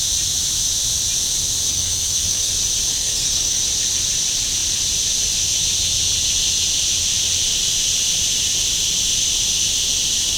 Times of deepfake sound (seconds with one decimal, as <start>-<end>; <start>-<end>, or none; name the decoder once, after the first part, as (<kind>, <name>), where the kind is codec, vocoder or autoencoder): 1.7-2.5 (codec, SNAC); 2.9-3.6